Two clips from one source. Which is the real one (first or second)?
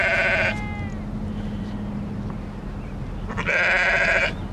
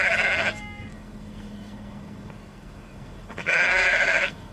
first